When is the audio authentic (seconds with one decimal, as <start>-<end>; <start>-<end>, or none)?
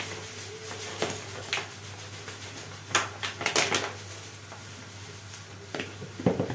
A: 0.0-0.9; 1.5-6.5